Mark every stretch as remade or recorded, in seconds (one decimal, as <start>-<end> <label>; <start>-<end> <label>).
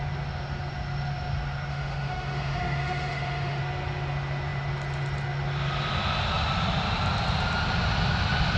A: 0.0-1.7 recorded; 1.7-3.6 remade; 3.6-8.6 recorded